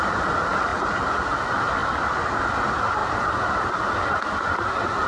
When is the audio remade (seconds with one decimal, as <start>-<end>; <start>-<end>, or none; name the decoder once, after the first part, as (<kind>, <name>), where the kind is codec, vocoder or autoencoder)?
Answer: 0.7-1.3 (vocoder, BigVGAN v2); 1.8-2.4; 3.0-3.7

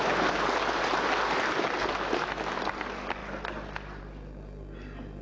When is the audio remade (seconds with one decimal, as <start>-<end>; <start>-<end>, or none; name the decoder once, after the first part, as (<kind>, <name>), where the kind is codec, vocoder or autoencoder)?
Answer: none

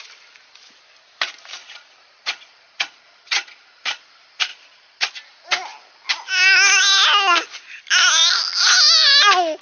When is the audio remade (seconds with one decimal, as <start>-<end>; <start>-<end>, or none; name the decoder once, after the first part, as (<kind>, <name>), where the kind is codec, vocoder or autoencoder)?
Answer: 1.6-4.0 (vocoder, Vocos); 4.5-5.1

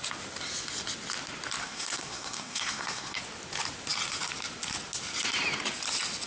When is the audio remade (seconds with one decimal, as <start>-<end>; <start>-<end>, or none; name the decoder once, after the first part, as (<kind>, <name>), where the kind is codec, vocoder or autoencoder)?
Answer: 1.6-3.2 (codec, SNAC)

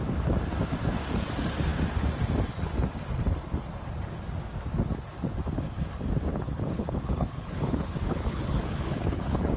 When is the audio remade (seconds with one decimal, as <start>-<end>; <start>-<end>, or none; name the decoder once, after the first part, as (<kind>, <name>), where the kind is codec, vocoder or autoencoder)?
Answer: 6.3-9.6 (codec, HILCodec)

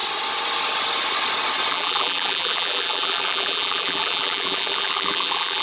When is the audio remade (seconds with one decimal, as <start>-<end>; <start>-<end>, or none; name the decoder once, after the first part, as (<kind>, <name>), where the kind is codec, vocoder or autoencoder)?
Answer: 1.7-5.6 (vocoder, BigVGAN v2)

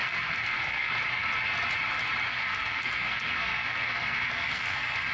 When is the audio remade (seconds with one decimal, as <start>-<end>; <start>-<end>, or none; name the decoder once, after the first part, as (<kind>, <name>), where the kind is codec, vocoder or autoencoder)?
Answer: 0.0-0.9 (codec, SNAC); 2.3-5.1

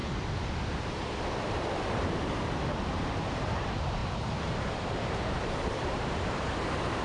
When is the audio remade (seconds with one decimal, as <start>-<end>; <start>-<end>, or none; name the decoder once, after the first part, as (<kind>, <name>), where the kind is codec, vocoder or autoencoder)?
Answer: 3.4-7.0 (vocoder, BigVGAN v2)